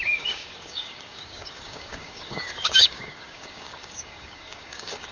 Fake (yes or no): yes